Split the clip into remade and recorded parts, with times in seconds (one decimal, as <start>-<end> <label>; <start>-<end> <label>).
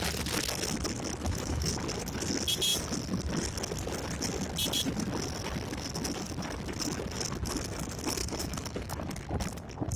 0.0-1.2 recorded; 1.2-1.7 remade; 1.7-8.2 recorded; 8.2-9.1 remade; 9.1-10.0 recorded